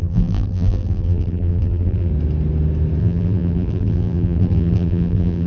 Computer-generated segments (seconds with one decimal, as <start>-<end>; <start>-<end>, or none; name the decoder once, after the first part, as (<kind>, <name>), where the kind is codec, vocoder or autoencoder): 0.0-2.1 (vocoder, BigVGAN v2); 3.0-5.5